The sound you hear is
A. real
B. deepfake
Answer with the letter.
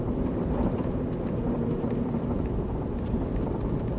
B